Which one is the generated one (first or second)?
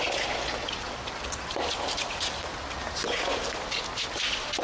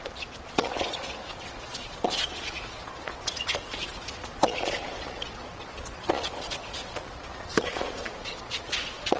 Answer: second